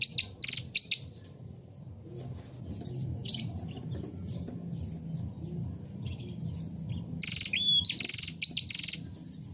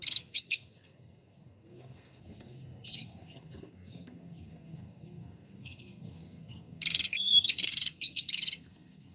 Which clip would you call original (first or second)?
first